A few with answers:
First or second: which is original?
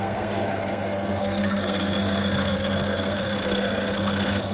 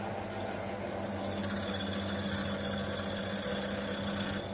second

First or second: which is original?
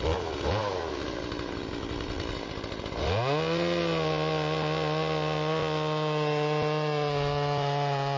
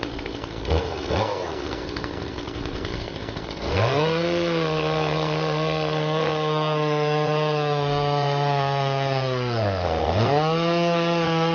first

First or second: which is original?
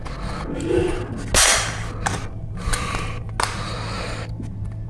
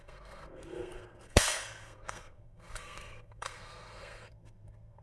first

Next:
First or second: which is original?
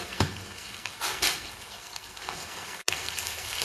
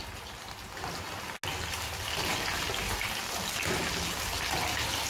second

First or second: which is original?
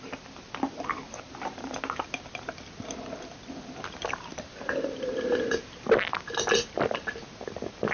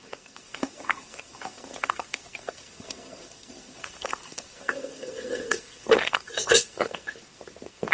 first